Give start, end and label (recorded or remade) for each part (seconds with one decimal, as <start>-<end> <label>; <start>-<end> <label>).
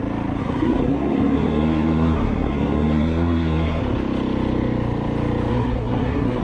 0.0-0.4 recorded; 0.4-3.8 remade; 3.8-5.5 recorded; 5.5-6.4 remade